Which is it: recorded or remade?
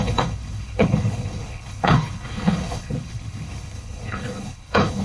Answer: remade